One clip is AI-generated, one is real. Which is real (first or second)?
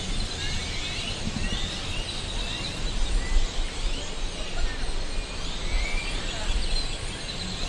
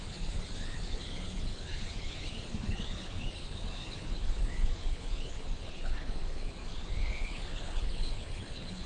first